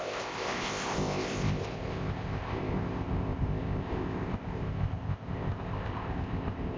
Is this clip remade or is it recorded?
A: remade